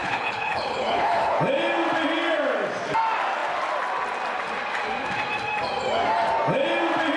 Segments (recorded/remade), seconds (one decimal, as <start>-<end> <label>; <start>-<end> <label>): 0.0-1.4 remade; 1.4-7.2 recorded